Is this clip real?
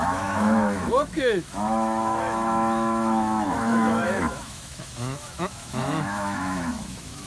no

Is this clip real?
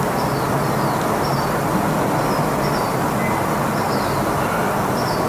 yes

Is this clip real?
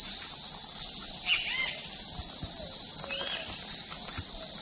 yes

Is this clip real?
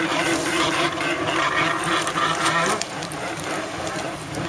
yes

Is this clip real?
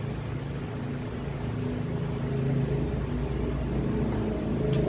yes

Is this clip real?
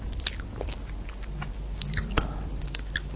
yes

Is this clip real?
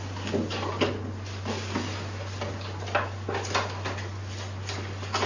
yes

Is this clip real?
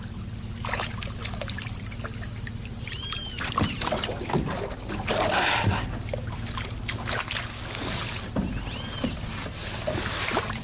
yes